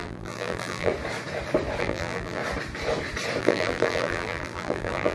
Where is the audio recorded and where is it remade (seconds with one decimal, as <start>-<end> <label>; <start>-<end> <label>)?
0.0-0.9 remade; 0.9-1.8 recorded; 1.8-2.4 remade; 2.4-3.4 recorded; 3.4-5.1 remade